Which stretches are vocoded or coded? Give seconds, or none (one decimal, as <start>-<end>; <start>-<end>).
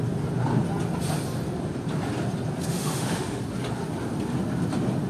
2.7-3.4